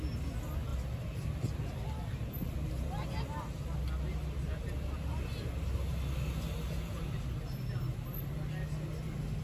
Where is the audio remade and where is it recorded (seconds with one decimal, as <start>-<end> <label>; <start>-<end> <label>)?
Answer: 0.0-0.7 recorded; 0.7-2.2 remade; 2.2-9.4 recorded